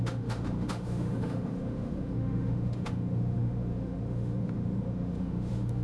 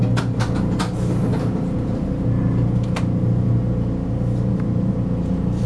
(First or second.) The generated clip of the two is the first